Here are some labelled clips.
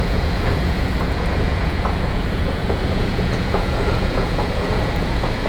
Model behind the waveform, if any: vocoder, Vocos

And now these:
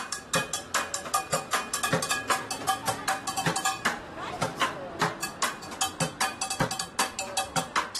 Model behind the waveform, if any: none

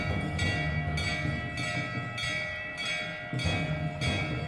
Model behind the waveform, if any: none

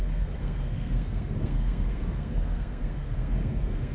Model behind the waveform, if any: codec, SNAC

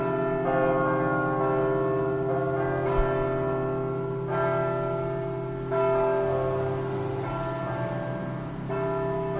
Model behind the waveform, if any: none